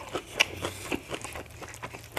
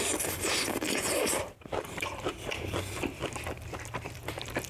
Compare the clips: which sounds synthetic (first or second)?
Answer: second